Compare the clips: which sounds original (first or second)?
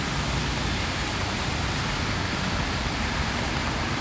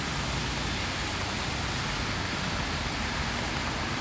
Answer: second